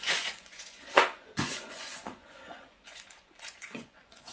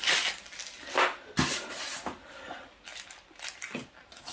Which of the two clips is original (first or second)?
second